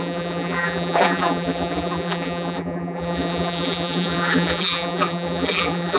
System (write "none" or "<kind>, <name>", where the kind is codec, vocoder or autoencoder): vocoder, BigVGAN v2